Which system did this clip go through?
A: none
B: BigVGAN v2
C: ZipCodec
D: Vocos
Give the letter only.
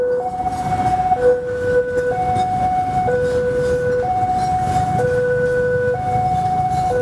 A